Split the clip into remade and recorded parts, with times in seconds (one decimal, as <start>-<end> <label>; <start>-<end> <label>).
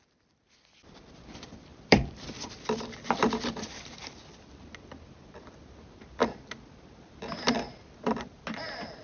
0.0-1.7 recorded; 1.7-2.5 remade; 2.5-9.0 recorded